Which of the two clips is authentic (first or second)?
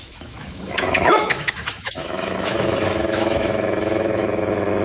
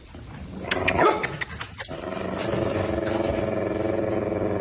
second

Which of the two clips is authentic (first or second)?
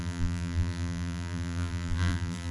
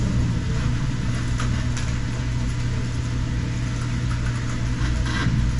second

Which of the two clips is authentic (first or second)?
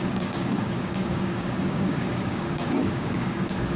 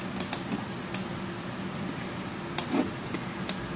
second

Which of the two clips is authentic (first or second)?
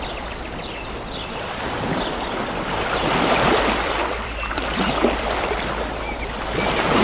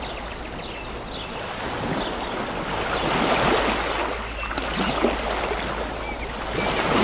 second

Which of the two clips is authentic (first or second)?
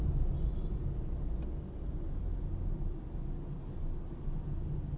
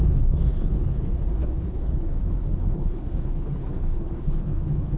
first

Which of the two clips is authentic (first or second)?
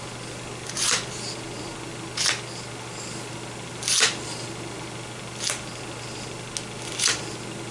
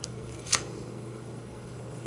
first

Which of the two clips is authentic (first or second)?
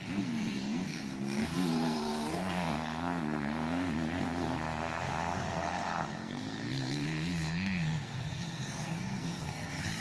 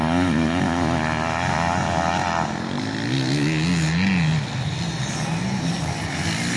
second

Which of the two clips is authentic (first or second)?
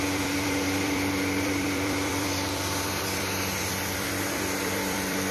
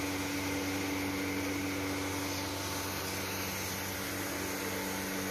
second